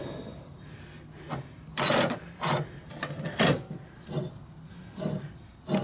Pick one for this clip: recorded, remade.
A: recorded